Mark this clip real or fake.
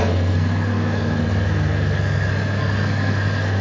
fake